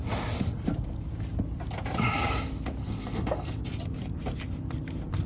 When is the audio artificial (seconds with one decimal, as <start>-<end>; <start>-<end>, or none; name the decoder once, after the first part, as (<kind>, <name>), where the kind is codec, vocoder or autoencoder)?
2.8-3.5 (codec, SNAC)